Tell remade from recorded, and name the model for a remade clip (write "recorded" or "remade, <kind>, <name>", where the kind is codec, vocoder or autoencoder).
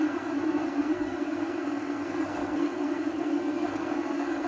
remade, codec, SNAC